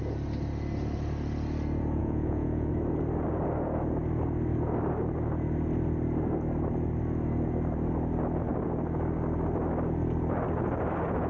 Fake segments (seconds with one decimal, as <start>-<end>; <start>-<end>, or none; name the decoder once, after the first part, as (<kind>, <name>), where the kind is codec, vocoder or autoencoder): 2.0-2.7 (vocoder, Vocos)